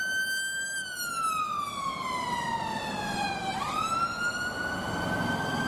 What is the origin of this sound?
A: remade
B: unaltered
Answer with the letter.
B